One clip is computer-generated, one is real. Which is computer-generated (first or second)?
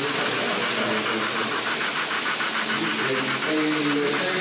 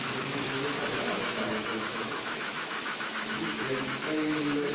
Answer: second